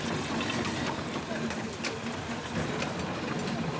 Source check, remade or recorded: recorded